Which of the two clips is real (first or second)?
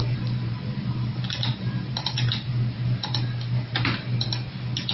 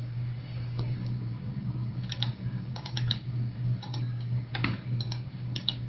first